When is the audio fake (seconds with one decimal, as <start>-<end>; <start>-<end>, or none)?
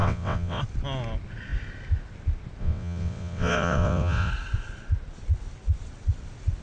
0.0-0.6; 2.6-4.3